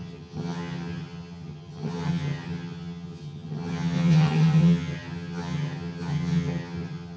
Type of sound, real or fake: fake